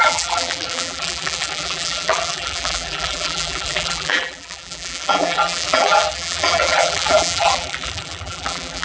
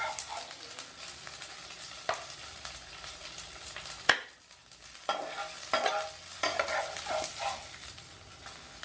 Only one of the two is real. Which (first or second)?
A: second